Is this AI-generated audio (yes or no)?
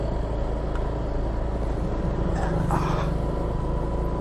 no